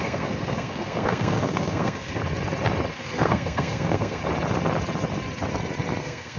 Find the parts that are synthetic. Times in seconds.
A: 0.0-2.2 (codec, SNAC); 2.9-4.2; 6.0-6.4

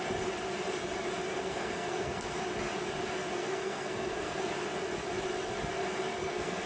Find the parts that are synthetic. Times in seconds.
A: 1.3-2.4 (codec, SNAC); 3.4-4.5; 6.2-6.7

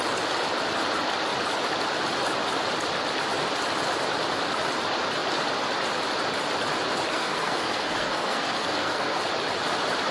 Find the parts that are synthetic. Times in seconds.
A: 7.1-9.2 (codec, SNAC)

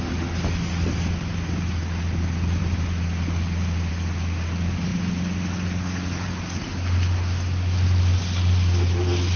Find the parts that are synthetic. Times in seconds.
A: none

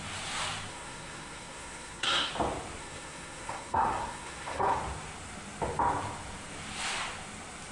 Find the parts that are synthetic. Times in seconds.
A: 0.7-2.3 (codec, SNAC); 2.8-4.8

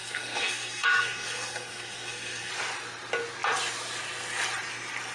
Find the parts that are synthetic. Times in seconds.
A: 0.0-2.5 (codec, SNAC)

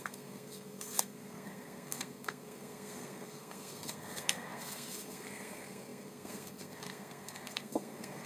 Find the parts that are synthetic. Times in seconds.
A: 0.0-8.3 (codec, SNAC)

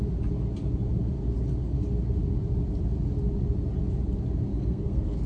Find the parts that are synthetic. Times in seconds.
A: 4.5-5.3 (codec, SNAC)